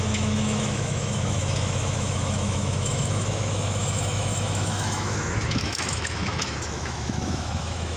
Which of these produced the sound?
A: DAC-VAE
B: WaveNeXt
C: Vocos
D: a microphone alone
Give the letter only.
A